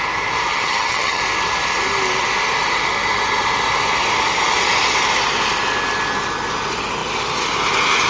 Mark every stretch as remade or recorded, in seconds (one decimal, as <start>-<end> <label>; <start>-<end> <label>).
0.0-0.5 recorded; 0.5-1.2 remade; 1.2-8.1 recorded